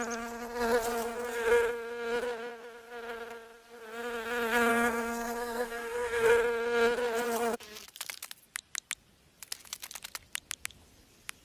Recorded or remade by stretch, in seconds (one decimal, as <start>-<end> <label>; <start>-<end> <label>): 0.0-4.7 recorded; 4.7-6.3 remade; 6.3-11.4 recorded